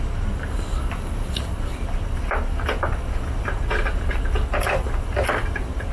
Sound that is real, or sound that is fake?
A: real